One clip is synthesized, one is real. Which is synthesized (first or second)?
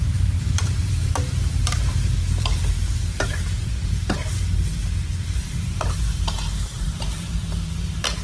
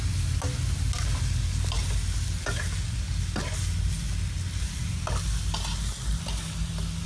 first